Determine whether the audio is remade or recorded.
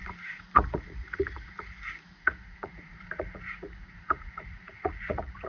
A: remade